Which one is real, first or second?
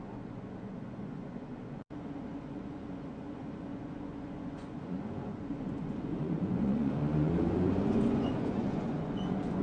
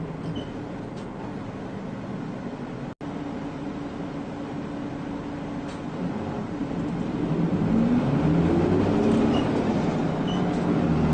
second